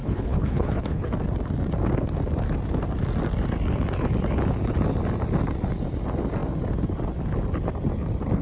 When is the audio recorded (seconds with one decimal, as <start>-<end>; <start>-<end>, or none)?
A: 1.1-8.4